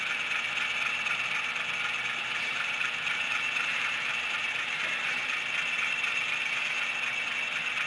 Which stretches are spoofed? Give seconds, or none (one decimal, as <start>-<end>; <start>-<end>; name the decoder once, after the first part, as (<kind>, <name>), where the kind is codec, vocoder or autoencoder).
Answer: 2.2-5.4 (vocoder, BigVGAN v2)